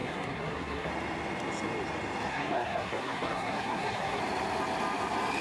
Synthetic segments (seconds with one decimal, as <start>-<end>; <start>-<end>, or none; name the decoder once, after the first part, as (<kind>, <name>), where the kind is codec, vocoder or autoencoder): 0.0-0.9 (codec, SNAC); 2.3-4.2